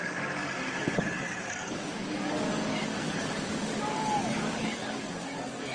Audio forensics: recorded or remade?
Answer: remade